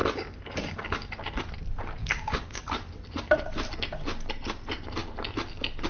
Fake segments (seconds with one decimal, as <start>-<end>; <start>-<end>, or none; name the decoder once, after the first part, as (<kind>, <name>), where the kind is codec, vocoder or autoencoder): 2.0-2.6 (codec, DAC)